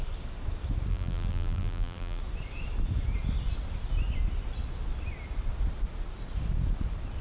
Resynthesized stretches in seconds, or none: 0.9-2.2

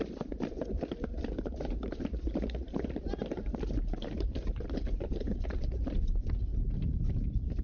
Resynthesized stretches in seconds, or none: none

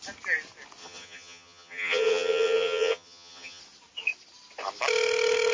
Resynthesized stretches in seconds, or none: 0.8-3.6

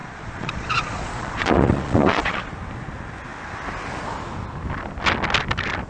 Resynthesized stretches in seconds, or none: 0.0-2.5

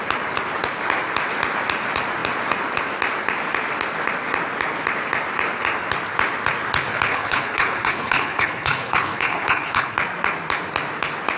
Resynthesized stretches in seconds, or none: 7.1-9.9

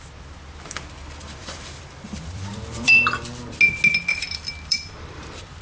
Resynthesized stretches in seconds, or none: 1.4-3.4; 4.1-5.6